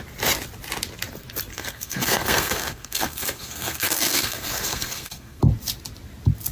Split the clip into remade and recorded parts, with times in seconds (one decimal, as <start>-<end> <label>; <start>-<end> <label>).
0.0-1.5 recorded; 1.5-5.4 remade; 5.4-6.5 recorded